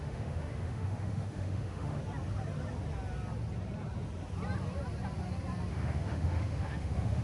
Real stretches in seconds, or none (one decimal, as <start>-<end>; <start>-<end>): 2.0-5.7